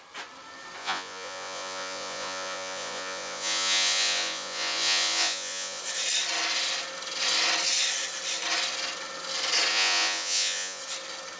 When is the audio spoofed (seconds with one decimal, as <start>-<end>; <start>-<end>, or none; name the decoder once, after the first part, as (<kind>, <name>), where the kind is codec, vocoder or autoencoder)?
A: 0.8-5.8 (vocoder, Vocos); 9.7-10.8